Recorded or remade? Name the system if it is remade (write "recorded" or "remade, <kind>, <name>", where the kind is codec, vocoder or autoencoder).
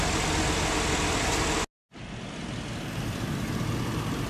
recorded